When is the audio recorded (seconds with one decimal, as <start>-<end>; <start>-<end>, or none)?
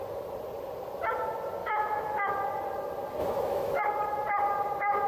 0.0-1.6; 2.3-3.2; 3.8-5.1